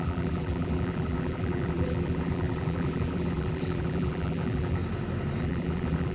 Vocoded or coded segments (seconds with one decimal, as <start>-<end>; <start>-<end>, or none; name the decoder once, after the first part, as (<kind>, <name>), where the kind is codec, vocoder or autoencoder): 0.0-4.8 (vocoder, BigVGAN v2); 5.4-6.1